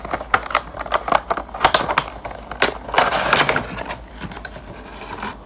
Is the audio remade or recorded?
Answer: recorded